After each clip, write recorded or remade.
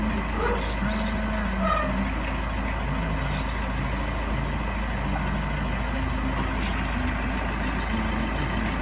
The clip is recorded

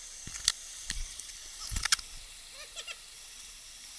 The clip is recorded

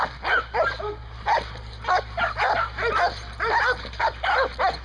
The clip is recorded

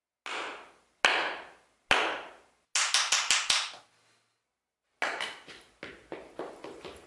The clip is recorded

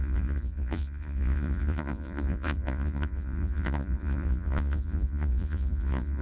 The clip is remade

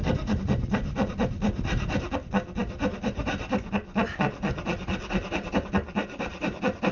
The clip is recorded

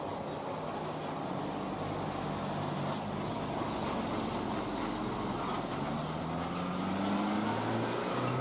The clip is recorded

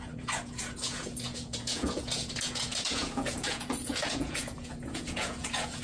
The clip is remade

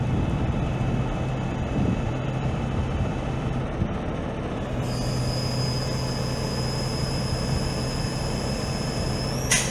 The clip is recorded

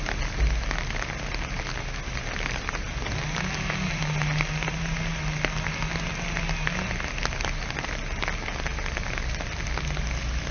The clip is recorded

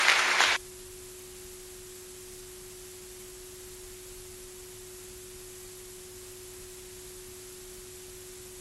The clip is recorded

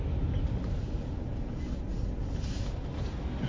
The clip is recorded